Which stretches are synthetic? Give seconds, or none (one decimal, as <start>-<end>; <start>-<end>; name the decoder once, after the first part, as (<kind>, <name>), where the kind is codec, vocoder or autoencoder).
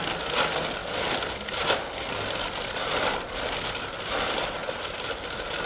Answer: none